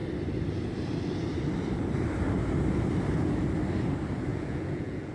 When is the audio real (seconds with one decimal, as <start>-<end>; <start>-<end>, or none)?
0.0-4.3